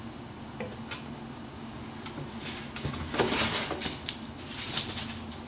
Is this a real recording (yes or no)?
yes